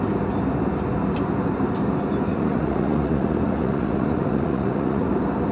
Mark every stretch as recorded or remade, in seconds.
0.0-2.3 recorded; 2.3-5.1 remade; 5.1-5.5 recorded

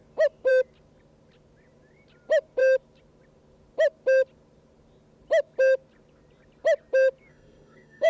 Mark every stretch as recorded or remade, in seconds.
0.0-7.3 recorded; 7.3-8.1 remade

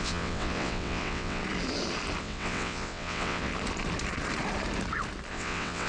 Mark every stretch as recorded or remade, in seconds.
0.0-1.4 remade; 1.4-2.2 recorded; 2.2-3.5 remade; 3.5-5.3 recorded; 5.3-5.9 remade

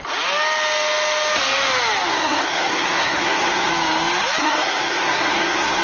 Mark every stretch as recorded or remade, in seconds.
0.0-2.1 recorded; 2.1-3.7 remade; 3.7-4.4 recorded; 4.4-5.8 remade

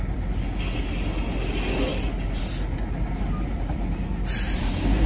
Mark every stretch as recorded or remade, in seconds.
0.0-5.1 recorded

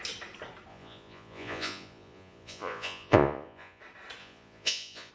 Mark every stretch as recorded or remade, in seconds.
0.0-0.7 recorded; 0.7-3.8 remade; 3.8-4.2 recorded; 4.2-5.1 remade

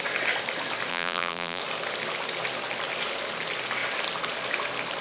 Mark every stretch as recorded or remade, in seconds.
0.0-0.9 recorded; 0.9-1.6 remade; 1.6-5.0 recorded